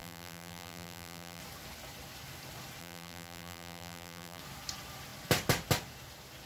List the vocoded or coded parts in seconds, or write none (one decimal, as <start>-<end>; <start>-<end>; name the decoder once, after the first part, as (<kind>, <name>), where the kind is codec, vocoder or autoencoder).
0.0-1.4 (vocoder, BigVGAN v2); 2.8-4.4